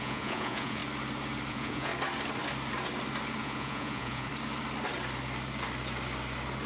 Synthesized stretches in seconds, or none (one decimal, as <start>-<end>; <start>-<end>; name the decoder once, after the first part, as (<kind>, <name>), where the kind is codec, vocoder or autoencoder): 0.0-0.8 (vocoder, Vocos); 1.5-1.9; 3.4-4.3